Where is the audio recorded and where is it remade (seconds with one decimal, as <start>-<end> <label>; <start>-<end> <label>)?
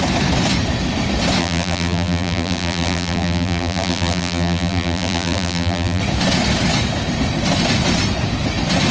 0.0-1.4 recorded; 1.4-6.0 remade; 6.0-8.9 recorded